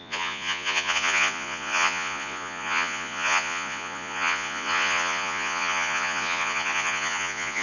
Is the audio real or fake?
fake